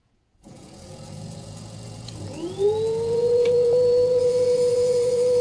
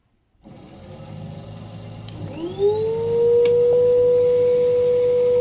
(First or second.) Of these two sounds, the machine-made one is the first